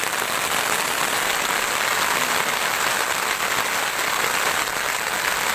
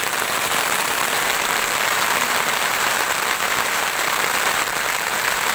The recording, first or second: first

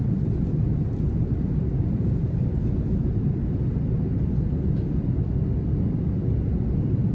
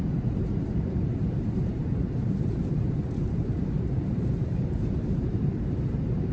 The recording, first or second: first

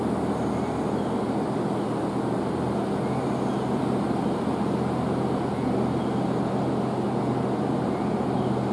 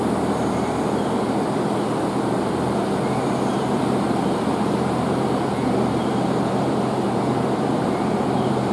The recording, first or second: first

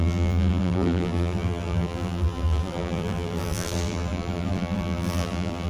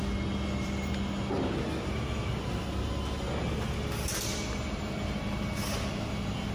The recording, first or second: second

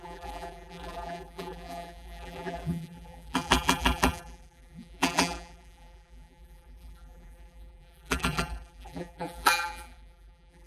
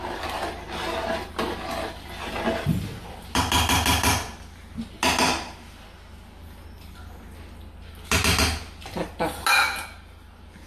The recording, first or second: second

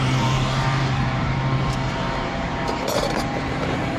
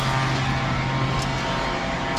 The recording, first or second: second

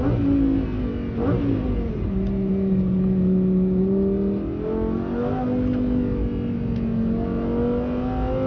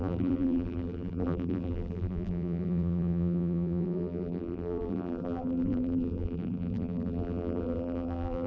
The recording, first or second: first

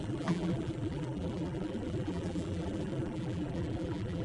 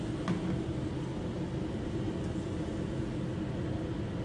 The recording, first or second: second